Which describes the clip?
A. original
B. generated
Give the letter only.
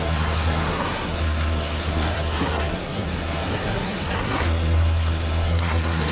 B